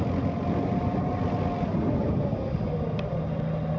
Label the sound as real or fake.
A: real